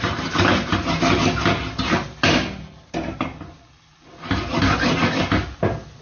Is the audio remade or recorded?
recorded